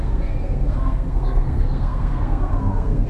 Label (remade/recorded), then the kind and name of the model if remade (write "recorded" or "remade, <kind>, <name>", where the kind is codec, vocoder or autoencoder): remade, codec, SNAC